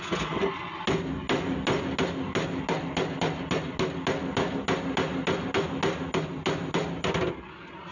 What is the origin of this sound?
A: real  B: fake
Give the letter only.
A